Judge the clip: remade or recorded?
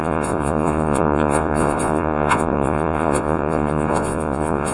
remade